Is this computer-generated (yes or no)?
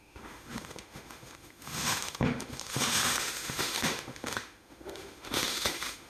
yes